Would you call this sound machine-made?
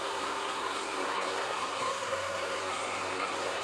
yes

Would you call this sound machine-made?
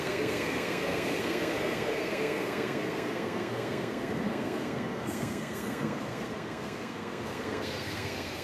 yes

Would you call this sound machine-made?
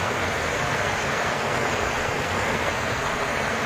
yes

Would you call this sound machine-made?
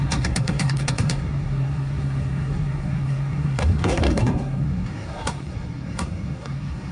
yes